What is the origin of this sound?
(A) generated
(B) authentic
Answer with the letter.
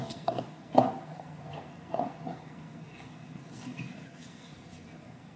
A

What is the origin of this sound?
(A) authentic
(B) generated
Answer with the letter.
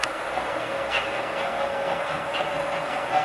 B